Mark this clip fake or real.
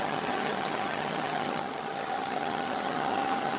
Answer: fake